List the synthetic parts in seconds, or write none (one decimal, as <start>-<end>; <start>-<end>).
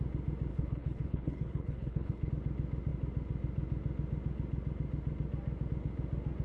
0.5-2.3